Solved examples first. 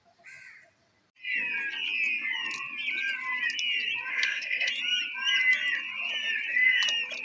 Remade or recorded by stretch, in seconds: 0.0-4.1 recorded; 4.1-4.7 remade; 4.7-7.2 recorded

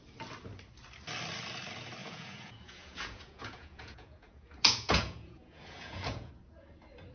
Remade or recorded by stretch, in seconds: 0.0-2.0 recorded; 2.0-6.3 remade; 6.3-7.1 recorded

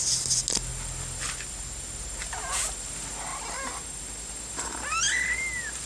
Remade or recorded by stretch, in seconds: 0.0-5.9 recorded